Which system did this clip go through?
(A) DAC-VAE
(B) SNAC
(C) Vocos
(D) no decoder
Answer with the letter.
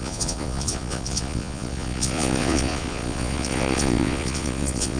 C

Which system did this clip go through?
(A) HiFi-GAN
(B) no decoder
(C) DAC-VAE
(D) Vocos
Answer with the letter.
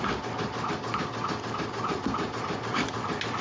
B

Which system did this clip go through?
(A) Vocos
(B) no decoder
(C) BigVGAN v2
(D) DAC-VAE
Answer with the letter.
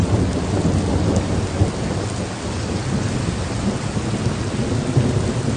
B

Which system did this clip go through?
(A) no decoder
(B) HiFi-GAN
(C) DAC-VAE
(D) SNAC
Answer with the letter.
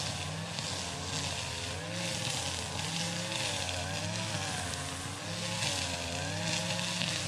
A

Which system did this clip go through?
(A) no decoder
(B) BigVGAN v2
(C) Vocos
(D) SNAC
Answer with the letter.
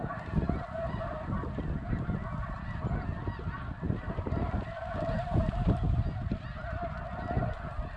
A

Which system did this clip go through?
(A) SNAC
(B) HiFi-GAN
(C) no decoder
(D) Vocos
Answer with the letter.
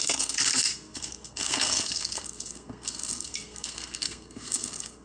A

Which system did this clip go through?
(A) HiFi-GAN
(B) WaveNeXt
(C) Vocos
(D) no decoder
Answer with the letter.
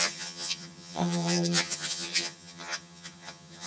A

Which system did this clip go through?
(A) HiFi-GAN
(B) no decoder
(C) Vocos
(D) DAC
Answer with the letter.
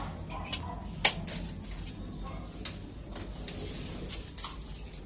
B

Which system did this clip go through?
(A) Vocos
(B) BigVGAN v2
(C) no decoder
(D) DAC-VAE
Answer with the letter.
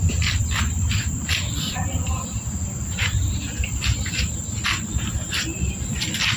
B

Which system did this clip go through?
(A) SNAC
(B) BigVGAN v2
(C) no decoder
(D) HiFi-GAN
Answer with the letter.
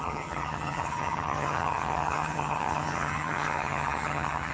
D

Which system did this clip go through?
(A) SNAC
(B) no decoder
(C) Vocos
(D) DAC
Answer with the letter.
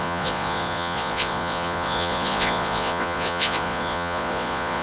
C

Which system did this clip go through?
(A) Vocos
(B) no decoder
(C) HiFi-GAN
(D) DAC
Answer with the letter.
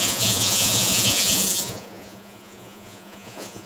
A